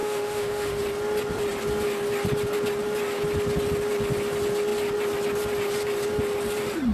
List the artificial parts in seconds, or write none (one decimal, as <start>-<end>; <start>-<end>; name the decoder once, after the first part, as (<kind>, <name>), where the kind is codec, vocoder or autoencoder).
0.0-0.8 (autoencoder, DAC-VAE)